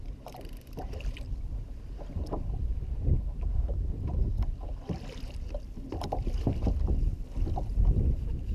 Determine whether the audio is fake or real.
fake